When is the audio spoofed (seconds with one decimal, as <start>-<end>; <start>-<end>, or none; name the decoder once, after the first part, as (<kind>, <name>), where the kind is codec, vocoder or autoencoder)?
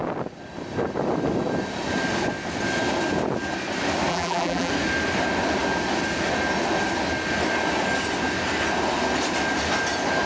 4.1-4.7 (vocoder, BigVGAN v2)